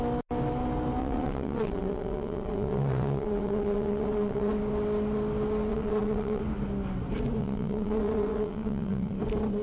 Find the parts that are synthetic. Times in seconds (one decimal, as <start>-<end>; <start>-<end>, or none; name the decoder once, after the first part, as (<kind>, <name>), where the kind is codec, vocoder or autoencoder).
1.0-4.5 (vocoder, WaveNeXt); 5.7-6.4; 7.4-9.2